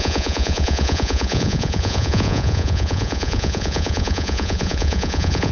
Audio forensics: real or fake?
fake